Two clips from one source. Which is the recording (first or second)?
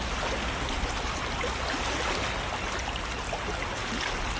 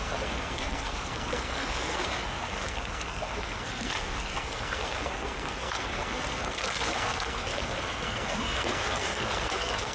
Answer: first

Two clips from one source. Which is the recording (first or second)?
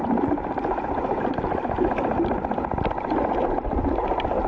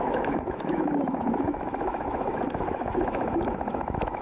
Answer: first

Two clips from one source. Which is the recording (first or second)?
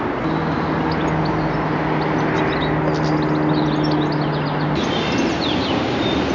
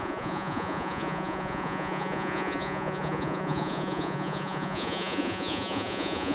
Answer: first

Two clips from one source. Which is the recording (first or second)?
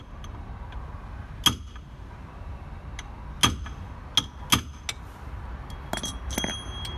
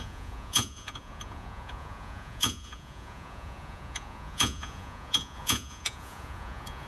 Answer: first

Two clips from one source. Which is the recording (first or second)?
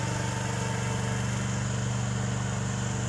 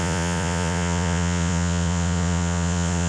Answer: first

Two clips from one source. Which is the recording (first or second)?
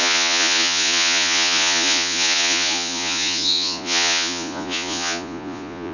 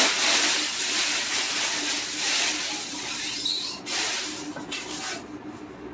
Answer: second